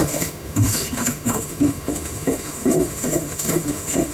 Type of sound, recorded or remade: remade